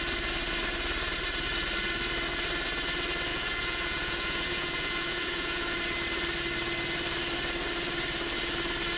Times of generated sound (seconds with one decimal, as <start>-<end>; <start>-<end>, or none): 3.3-5.8